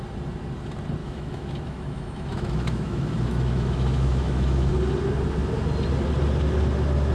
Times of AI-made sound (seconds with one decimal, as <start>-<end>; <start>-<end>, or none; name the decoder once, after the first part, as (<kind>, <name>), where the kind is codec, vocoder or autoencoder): 1.0-4.7 (autoencoder, DAC-VAE)